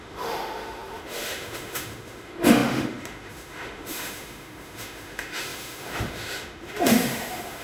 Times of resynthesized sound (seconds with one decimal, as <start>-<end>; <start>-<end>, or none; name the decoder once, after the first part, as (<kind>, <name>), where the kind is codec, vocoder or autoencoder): 0.0-7.6 (autoencoder, DAC-VAE)

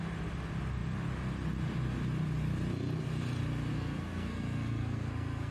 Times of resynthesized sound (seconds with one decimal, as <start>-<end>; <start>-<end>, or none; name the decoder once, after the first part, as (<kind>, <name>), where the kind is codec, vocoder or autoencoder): 3.7-5.5 (codec, SNAC)

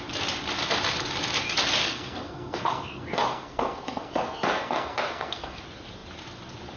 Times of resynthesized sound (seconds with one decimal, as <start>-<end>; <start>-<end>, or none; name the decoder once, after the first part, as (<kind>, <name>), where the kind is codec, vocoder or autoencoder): 1.8-5.6 (codec, SNAC)

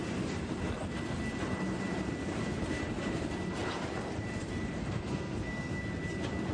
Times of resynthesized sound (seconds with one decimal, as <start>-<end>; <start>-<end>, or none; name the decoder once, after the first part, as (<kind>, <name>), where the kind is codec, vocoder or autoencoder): 4.8-5.8 (codec, SNAC)

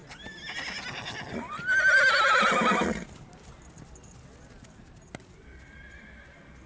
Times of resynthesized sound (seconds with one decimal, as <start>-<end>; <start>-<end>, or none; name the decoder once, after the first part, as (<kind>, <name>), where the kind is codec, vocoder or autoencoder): none

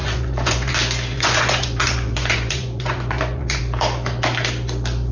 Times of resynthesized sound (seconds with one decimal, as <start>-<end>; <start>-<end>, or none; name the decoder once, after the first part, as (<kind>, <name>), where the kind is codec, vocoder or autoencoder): 0.0-0.7 (vocoder, Vocos); 1.1-3.6

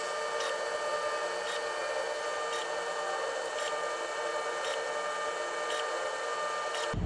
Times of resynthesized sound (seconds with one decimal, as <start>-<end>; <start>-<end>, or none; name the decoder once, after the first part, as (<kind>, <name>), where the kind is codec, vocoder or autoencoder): none

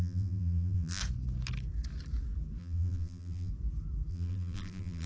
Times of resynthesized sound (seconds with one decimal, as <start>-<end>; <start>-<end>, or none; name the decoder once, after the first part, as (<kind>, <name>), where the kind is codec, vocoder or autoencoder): 0.0-1.0 (vocoder, BigVGAN v2); 2.6-3.5; 4.1-5.1